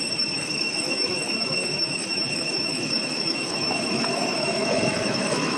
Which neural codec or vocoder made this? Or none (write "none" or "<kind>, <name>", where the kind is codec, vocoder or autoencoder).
autoencoder, DAC-VAE